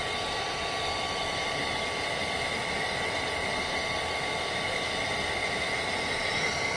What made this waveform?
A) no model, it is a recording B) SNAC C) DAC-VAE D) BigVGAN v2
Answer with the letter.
A